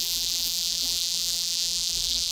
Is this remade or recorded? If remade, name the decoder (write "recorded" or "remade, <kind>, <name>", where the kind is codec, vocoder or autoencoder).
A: remade, vocoder, BigVGAN v2